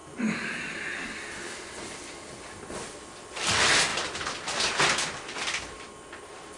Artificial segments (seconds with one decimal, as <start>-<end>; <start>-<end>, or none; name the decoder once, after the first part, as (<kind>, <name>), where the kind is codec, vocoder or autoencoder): none

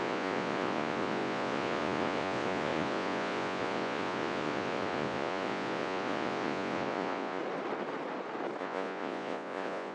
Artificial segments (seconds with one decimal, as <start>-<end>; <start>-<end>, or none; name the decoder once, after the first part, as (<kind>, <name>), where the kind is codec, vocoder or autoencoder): 0.0-7.4 (vocoder, Vocos); 8.6-9.9

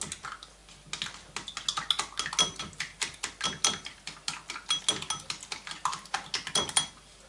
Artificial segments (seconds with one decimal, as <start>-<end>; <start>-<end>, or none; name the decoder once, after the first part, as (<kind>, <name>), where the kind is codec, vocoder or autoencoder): none

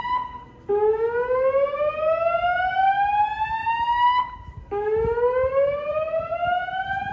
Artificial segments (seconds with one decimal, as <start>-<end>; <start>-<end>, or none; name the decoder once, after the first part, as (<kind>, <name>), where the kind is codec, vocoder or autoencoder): none

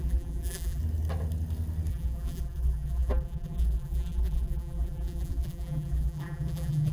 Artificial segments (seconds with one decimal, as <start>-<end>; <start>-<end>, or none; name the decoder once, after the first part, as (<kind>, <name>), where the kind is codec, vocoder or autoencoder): 0.0-0.8 (vocoder, BigVGAN v2); 1.9-6.9

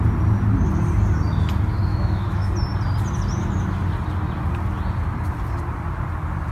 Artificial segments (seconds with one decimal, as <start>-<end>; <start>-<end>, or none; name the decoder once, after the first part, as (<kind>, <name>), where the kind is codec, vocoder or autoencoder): 1.9-2.5 (autoencoder, DAC-VAE)

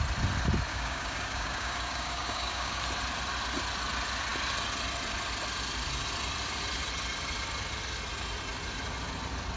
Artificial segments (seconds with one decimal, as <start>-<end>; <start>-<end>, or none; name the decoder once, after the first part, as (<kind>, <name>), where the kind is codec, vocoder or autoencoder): 0.7-2.8 (codec, DAC)

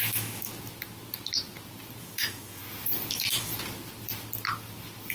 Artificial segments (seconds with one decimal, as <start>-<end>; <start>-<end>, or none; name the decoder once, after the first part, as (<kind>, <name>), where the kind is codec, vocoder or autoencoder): 0.0-0.5 (autoencoder, DAC-VAE); 2.0-2.6; 3.1-3.5